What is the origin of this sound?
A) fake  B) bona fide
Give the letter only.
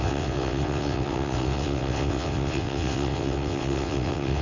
A